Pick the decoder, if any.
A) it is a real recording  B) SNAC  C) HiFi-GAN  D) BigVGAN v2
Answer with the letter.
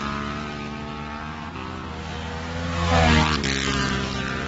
A